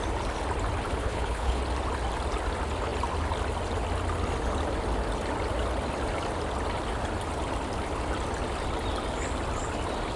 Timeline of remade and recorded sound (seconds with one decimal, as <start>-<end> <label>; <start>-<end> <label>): 0.0-1.0 recorded; 1.0-1.6 remade; 1.6-10.2 recorded